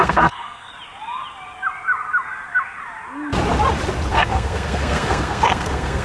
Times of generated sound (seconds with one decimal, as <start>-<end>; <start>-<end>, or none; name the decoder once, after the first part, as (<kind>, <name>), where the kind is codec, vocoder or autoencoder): 0.0-0.7 (codec, SNAC); 4.1-6.0